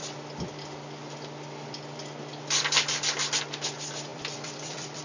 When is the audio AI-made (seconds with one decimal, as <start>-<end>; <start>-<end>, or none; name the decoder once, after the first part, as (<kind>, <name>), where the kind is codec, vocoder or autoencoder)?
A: 4.1-5.0 (vocoder, BigVGAN v2)

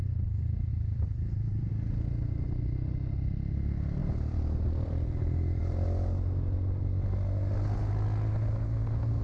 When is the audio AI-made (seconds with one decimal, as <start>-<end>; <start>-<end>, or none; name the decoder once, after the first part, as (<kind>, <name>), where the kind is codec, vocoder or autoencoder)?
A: 0.7-1.7 (vocoder, BigVGAN v2); 4.0-5.6